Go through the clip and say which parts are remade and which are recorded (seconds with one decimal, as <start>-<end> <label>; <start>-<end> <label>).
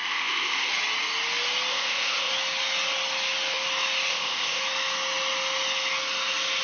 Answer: 0.0-0.7 remade; 0.7-1.7 recorded; 1.7-2.3 remade; 2.3-4.1 recorded; 4.1-4.6 remade; 4.6-6.6 recorded